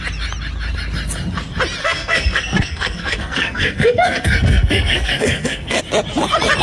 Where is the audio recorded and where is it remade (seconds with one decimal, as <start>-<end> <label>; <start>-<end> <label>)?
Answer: 0.0-1.8 recorded; 1.8-5.8 remade; 5.8-6.6 recorded